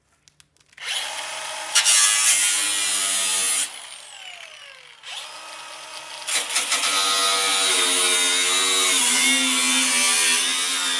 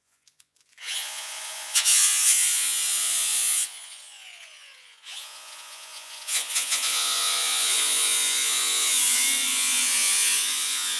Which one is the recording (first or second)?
first